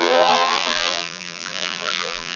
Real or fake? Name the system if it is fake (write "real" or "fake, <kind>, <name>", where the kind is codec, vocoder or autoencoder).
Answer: fake, vocoder, BigVGAN v2